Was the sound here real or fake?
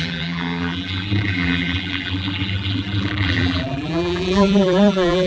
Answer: fake